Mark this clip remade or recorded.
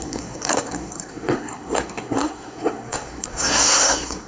remade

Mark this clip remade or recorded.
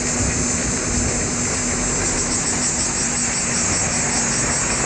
recorded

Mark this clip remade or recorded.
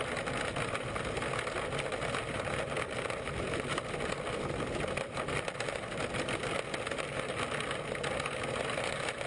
recorded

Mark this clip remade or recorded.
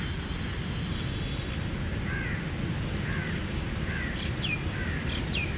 recorded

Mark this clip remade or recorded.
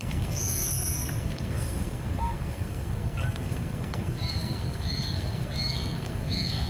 remade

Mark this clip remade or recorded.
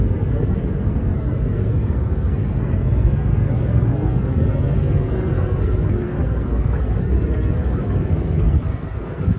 remade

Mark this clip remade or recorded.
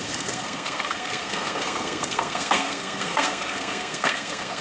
remade